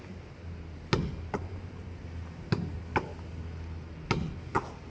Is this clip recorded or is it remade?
recorded